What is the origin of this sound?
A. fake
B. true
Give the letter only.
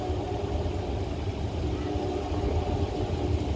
B